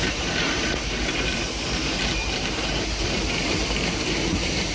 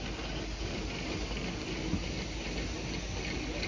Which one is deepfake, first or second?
first